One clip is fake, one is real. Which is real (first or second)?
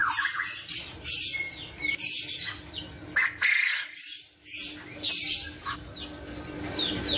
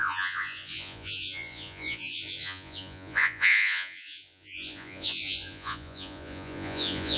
first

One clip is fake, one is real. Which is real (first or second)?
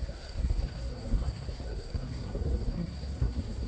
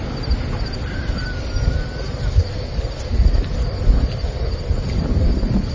second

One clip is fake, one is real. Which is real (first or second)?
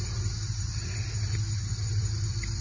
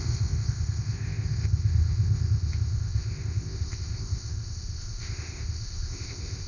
first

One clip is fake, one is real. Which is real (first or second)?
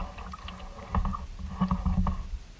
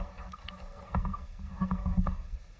first